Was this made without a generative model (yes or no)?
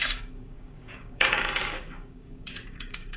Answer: no